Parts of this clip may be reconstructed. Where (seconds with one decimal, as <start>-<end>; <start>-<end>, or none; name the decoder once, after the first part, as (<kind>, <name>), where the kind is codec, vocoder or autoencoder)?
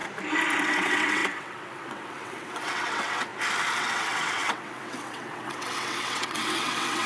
0.6-3.3 (vocoder, WaveNeXt); 3.8-7.1